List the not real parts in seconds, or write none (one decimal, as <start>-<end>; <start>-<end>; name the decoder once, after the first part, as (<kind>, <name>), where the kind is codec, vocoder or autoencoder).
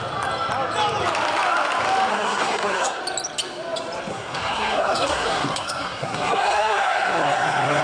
2.1-3.0 (codec, SNAC); 4.1-7.8